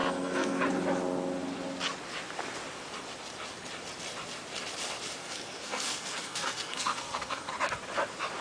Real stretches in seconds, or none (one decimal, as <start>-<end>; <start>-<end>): 0.6-5.2; 7.5-8.4